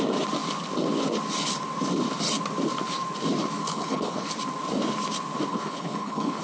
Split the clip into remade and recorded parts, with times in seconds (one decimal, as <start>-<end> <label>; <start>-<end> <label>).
0.0-3.6 recorded; 3.6-4.3 remade; 4.3-5.5 recorded; 5.5-6.4 remade